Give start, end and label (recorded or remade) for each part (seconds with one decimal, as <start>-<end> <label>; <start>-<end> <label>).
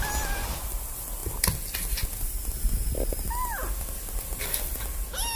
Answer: 0.0-5.4 recorded